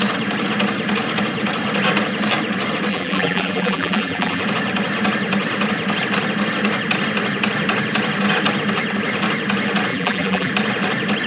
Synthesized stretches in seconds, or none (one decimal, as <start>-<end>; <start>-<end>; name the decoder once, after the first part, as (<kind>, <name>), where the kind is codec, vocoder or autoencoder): 2.9-4.4 (vocoder, BigVGAN v2); 9.9-10.5

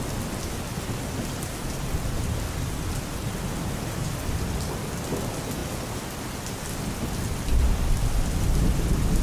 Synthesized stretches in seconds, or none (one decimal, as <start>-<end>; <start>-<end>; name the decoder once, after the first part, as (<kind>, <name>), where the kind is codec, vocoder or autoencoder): none

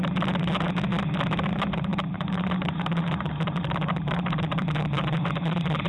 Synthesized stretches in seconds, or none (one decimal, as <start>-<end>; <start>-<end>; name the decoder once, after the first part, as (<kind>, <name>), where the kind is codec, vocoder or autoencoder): 0.0-0.9 (vocoder, BigVGAN v2); 1.5-5.9

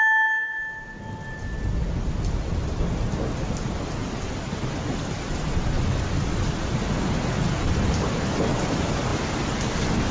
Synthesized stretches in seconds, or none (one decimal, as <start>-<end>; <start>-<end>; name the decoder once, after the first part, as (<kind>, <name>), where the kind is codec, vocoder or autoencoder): none

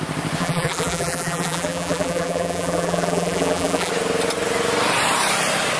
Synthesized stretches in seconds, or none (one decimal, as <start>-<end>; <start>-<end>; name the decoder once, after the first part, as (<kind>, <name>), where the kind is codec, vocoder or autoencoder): 0.4-3.9 (vocoder, BigVGAN v2)

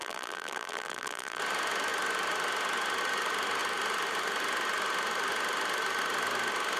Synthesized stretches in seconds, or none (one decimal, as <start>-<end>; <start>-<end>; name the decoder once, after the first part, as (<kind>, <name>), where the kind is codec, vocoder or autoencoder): 0.0-1.4 (vocoder, BigVGAN v2)